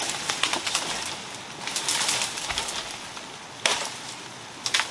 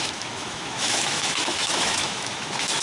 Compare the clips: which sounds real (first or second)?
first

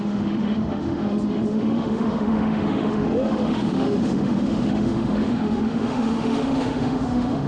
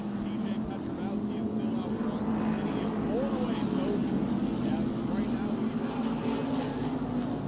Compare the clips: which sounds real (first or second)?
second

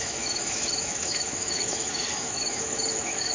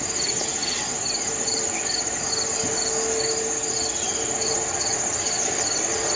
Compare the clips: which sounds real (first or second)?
second